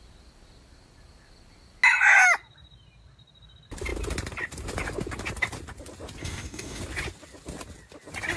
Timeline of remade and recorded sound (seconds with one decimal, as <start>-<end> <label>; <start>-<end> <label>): 0.0-6.2 recorded; 6.2-6.8 remade; 6.8-8.4 recorded